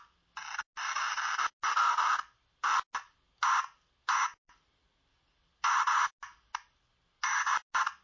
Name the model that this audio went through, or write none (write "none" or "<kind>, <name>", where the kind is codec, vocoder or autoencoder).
none